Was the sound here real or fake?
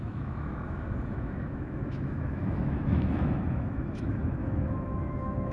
fake